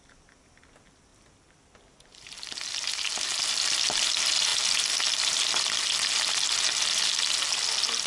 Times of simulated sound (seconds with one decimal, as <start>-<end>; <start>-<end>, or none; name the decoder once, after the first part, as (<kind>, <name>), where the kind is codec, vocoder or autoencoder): none